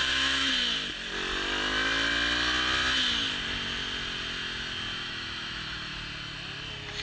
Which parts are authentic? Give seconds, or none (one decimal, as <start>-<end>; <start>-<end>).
0.5-4.9; 5.9-7.0